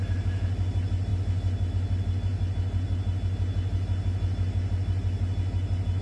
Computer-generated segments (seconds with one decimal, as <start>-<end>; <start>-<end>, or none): none